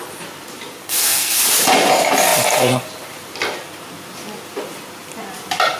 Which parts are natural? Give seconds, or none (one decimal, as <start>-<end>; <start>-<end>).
0.0-0.8; 1.4-5.8